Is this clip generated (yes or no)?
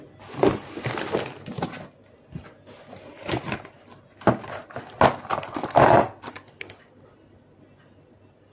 no